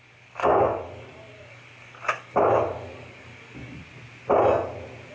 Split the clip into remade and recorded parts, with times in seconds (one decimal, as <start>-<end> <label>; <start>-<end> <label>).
0.0-3.8 remade; 3.8-5.1 recorded